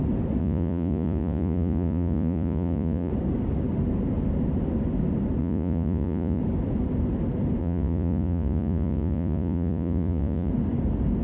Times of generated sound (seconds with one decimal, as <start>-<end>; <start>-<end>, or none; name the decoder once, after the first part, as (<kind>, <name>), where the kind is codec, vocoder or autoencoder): 0.4-3.1 (vocoder, Vocos); 5.4-6.4; 7.6-10.5